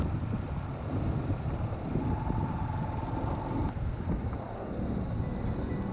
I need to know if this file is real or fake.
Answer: real